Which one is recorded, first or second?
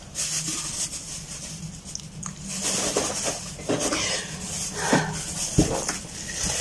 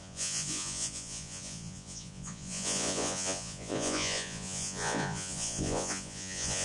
first